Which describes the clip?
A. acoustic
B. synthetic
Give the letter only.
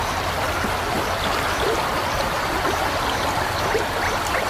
A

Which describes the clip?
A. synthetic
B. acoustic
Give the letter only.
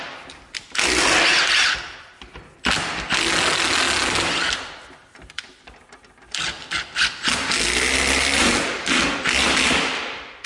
B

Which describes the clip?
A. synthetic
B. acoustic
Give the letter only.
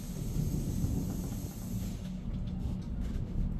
B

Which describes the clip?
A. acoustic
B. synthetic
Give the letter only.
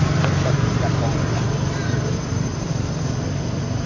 A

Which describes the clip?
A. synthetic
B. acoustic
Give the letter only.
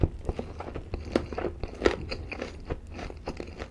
B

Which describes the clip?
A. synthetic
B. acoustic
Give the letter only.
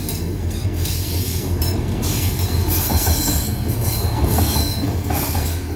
A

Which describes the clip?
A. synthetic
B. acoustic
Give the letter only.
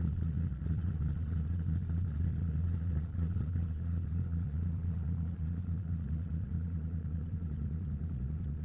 A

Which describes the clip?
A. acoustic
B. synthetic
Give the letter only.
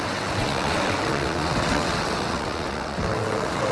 B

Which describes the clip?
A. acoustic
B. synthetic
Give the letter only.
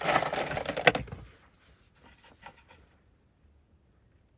A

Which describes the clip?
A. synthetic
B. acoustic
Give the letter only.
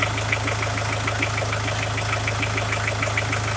B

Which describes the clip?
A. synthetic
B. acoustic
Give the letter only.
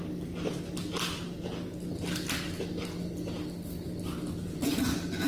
B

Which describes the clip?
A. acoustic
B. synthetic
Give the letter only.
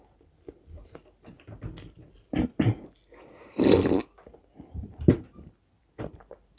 A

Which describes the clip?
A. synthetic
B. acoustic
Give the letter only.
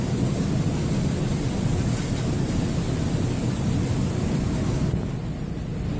B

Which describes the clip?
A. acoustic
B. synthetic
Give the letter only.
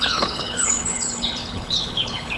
B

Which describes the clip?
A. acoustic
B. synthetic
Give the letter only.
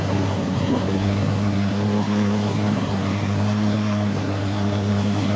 B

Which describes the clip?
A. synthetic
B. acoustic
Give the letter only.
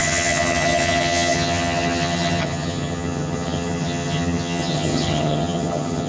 A